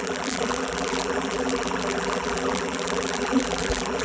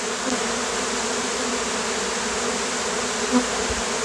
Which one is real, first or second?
second